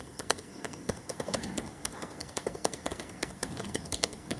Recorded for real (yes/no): no